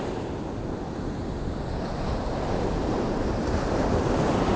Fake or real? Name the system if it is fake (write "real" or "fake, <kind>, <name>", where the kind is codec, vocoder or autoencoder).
real